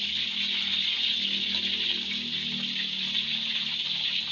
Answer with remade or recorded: recorded